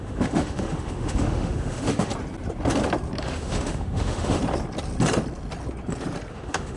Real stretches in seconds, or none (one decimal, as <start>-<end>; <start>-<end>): 2.1-3.2; 4.4-6.3